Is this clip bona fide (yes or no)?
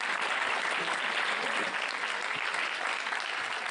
yes